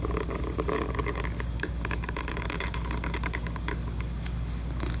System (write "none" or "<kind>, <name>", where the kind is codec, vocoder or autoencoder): codec, DAC